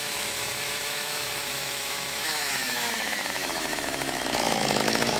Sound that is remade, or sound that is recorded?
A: remade